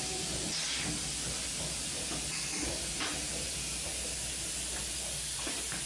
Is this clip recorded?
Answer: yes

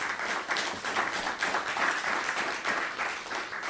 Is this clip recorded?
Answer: yes